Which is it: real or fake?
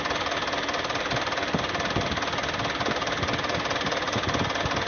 real